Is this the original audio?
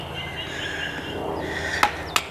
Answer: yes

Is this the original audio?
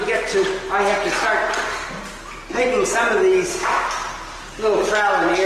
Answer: yes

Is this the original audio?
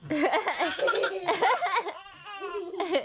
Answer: yes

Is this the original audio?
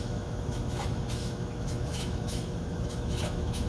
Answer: no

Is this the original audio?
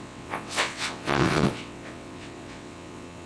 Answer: no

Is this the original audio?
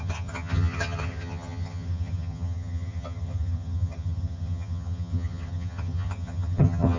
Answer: no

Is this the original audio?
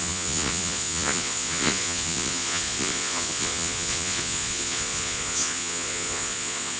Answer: no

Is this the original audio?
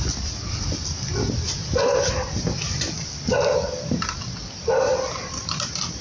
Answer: yes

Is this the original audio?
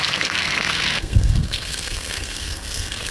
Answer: no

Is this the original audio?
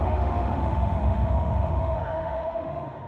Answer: no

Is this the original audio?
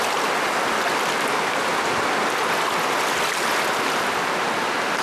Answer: yes